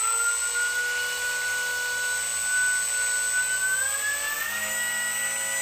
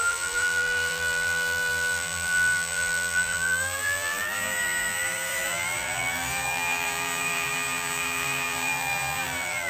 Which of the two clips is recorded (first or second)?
first